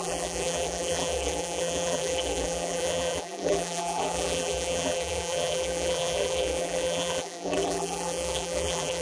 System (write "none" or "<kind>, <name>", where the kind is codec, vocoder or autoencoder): vocoder, BigVGAN v2